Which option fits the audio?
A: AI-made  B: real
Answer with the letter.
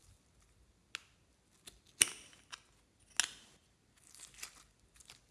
B